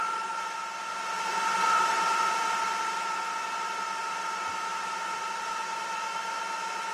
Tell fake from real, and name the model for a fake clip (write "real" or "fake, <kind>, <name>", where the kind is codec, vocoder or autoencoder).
fake, vocoder, BigVGAN v2